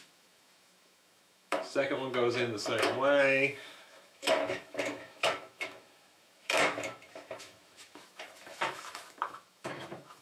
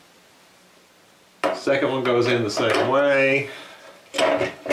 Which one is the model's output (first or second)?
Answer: first